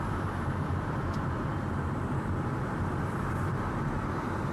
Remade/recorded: remade